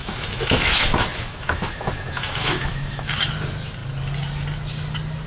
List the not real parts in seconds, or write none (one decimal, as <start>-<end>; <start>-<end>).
0.0-3.2